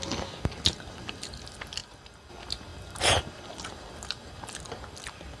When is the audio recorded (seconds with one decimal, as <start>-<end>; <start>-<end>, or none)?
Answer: 0.0-5.4